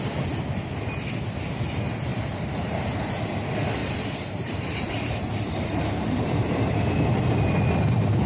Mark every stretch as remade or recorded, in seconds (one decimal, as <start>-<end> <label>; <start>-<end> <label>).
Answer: 0.0-2.1 recorded; 2.1-3.1 remade; 3.1-3.8 recorded; 3.8-6.7 remade; 6.7-8.3 recorded